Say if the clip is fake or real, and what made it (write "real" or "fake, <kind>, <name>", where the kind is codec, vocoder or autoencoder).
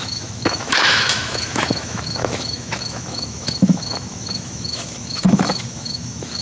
fake, autoencoder, DAC-VAE